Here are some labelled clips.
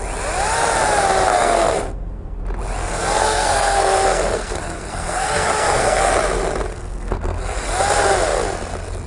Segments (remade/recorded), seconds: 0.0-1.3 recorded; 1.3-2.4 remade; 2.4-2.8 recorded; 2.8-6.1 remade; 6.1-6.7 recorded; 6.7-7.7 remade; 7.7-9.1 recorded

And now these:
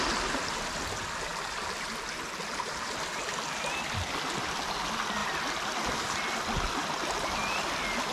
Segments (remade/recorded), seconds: 0.0-8.1 recorded

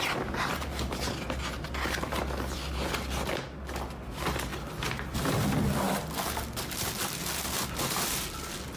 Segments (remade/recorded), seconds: 0.0-8.8 recorded

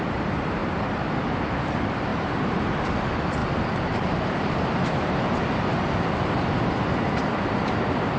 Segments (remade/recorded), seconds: 0.0-2.1 recorded; 2.1-2.8 remade; 2.8-3.4 recorded; 3.4-6.0 remade; 6.0-8.2 recorded

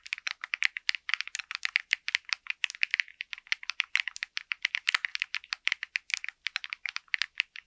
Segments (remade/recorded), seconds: 0.0-7.7 recorded